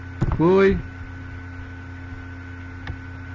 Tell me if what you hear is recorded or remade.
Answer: recorded